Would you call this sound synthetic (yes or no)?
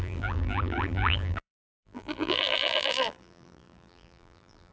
yes